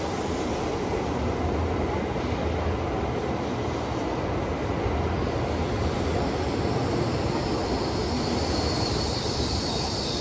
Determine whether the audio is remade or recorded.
recorded